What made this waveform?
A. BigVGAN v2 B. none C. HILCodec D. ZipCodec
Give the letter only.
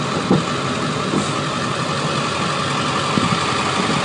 B